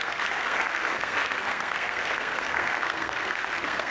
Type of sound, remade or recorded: remade